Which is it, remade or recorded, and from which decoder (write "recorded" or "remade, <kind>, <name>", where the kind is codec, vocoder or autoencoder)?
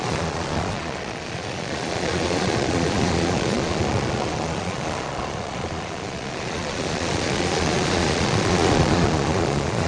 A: remade, vocoder, Vocos